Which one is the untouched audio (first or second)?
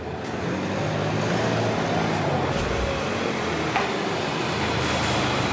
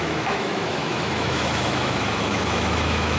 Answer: first